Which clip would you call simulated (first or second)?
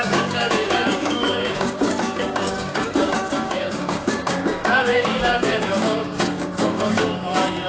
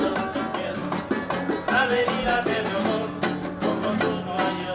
first